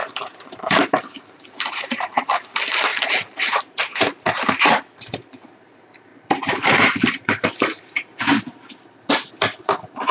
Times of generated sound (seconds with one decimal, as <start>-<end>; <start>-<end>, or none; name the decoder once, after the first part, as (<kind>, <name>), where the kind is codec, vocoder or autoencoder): 0.0-2.5 (vocoder, BigVGAN v2); 2.9-5.5; 6.1-9.1